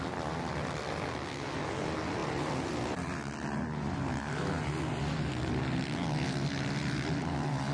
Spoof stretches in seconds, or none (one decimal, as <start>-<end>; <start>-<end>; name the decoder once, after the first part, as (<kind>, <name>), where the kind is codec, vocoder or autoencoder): none